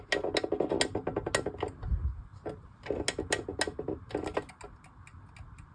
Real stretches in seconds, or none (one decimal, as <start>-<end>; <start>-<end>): 0.0-5.7

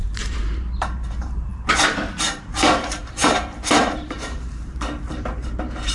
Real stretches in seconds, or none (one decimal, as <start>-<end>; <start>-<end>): none

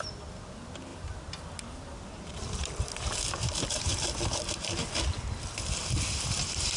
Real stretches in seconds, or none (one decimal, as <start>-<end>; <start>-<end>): 0.0-0.9; 5.0-6.8